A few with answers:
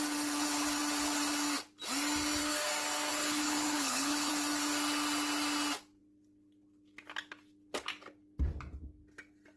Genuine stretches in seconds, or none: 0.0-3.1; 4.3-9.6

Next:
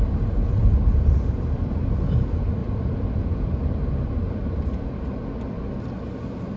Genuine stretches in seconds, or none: 0.0-0.6; 2.0-2.6; 3.8-6.6